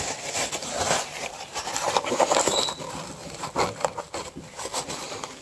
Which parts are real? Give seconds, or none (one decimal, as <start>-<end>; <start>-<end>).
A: 0.0-0.6; 2.3-5.4